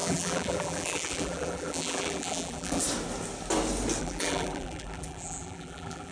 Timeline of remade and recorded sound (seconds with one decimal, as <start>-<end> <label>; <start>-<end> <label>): 0.0-2.8 remade; 2.8-4.0 recorded; 4.0-6.1 remade